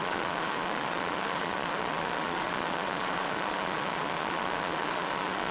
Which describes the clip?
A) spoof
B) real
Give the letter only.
A